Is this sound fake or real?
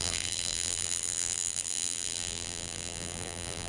fake